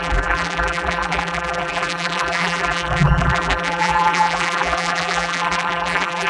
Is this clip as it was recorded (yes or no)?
no